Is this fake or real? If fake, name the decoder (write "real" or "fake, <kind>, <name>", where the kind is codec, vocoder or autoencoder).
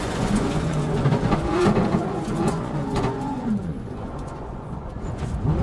fake, vocoder, Vocos